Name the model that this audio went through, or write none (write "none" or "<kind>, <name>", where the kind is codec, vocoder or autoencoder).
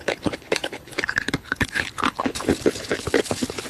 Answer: codec, HILCodec